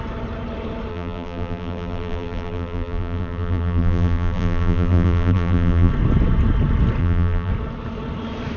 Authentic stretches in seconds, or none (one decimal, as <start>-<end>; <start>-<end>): 0.0-0.9; 5.9-7.0; 7.5-8.6